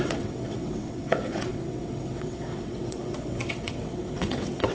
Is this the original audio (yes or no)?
no